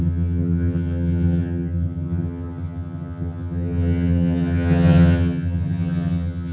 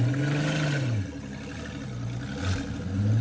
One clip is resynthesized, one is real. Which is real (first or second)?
second